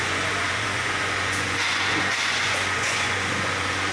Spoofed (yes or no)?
yes